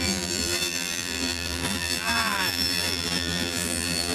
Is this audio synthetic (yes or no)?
yes